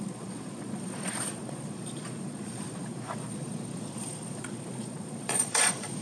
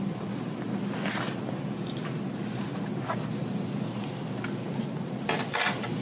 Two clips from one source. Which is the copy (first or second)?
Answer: first